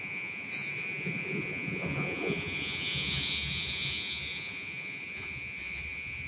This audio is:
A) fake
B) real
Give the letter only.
A